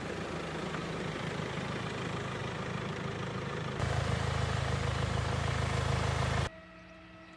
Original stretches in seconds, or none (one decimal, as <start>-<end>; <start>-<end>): 0.0-0.8; 1.8-2.4; 5.5-7.4